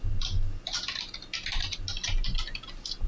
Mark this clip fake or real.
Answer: real